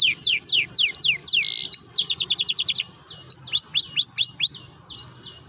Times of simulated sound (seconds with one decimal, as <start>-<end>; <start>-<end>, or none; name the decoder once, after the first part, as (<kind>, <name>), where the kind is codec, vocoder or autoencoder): none